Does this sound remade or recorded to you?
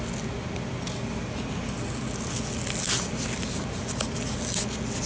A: recorded